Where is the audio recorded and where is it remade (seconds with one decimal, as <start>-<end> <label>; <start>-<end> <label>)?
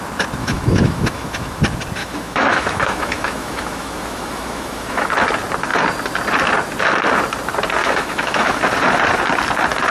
0.0-0.4 recorded; 0.4-1.6 remade; 1.6-2.0 recorded; 2.0-5.1 remade; 5.1-7.8 recorded; 7.8-8.6 remade; 8.6-9.9 recorded